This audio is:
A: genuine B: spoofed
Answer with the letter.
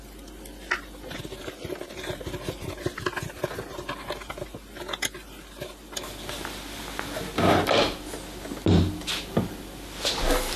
A